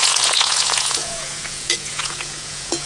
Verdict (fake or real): fake